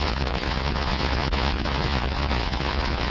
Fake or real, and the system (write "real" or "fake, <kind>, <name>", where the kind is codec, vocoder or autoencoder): fake, vocoder, Vocos